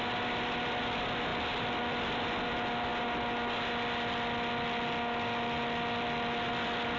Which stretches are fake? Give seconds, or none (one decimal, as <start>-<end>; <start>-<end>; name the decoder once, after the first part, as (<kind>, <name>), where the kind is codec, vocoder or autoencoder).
1.3-2.5 (vocoder, BigVGAN v2)